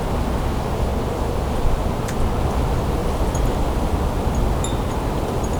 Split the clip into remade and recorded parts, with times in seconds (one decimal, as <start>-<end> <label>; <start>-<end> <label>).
0.0-0.9 recorded; 0.9-2.4 remade; 2.4-3.0 recorded; 3.0-3.9 remade; 3.9-4.7 recorded; 4.7-5.6 remade

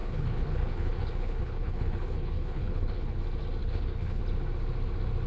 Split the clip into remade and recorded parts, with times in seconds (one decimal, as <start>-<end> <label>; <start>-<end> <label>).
0.0-3.2 remade; 3.2-3.6 recorded; 3.6-4.2 remade; 4.2-5.3 recorded

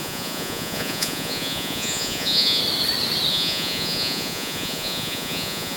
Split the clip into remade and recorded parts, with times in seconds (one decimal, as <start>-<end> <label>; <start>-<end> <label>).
0.0-2.6 remade; 2.6-3.3 recorded; 3.3-5.8 remade

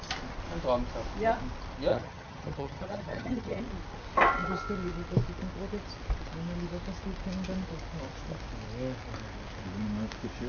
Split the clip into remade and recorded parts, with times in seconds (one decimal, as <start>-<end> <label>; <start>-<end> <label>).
0.0-1.9 recorded; 1.9-3.6 remade; 3.6-10.5 recorded

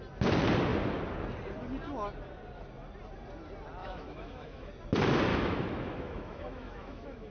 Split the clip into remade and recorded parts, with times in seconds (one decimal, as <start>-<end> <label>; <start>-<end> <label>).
0.0-3.8 recorded; 3.8-4.7 remade; 4.7-5.3 recorded; 5.3-7.3 remade

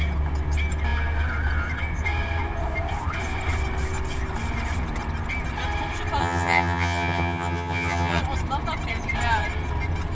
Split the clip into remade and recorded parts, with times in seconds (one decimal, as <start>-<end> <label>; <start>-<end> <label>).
0.0-6.2 recorded; 6.2-8.2 remade; 8.2-10.1 recorded

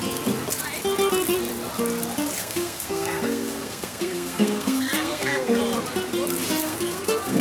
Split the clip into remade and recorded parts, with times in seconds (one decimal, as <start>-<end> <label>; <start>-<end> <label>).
0.0-2.4 recorded; 2.4-5.6 remade; 5.6-6.6 recorded; 6.6-7.4 remade

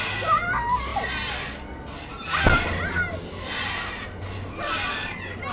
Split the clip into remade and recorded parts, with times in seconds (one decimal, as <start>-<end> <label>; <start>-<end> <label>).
0.0-5.5 recorded